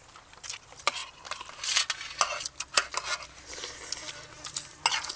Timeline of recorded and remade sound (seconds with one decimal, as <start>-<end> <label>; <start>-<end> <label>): 0.0-5.2 recorded